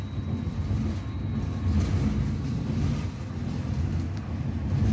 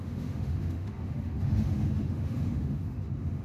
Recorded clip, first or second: first